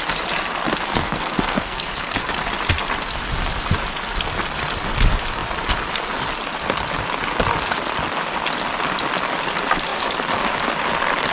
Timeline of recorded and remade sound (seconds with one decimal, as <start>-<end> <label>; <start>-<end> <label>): 0.0-1.0 recorded; 1.0-2.3 remade; 2.3-11.3 recorded